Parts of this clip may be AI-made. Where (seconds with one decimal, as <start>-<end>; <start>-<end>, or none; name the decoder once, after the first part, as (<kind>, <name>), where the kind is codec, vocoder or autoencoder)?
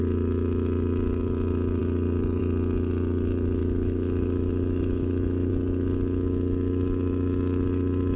3.6-5.5 (autoencoder, DAC-VAE)